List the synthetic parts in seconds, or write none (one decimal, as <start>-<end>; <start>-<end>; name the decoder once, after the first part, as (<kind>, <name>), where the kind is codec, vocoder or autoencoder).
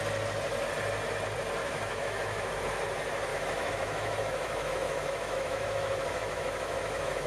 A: 1.6-2.5 (autoencoder, DAC-VAE); 3.3-7.3